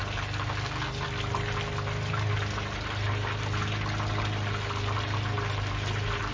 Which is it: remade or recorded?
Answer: recorded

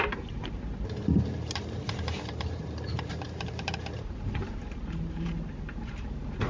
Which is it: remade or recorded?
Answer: remade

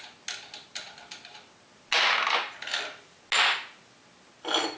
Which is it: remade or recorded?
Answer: recorded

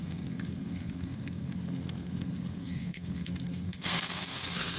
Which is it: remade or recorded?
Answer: remade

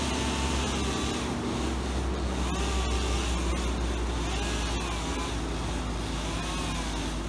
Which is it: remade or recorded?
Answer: recorded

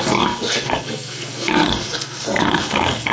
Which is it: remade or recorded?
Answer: remade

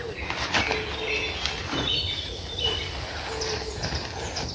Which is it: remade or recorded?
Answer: recorded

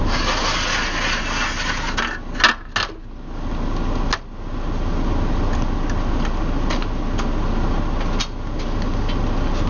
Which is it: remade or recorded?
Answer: recorded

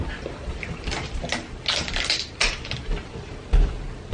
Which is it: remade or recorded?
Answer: recorded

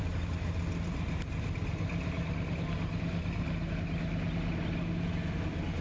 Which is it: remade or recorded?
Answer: recorded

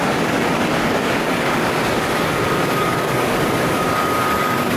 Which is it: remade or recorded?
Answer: remade